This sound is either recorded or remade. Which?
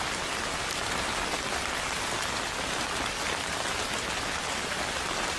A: recorded